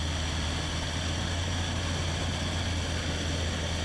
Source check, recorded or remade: recorded